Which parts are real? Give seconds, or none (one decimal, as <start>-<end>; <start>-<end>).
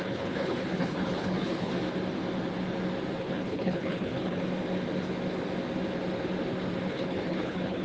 1.7-3.2; 4.4-6.9